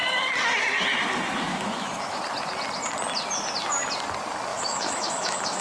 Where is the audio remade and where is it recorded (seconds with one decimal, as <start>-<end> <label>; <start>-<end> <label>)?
0.0-1.5 recorded; 1.5-2.2 remade; 2.2-4.5 recorded; 4.5-5.6 remade